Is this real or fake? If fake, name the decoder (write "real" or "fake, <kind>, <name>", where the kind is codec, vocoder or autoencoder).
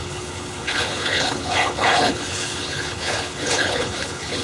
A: fake, codec, HILCodec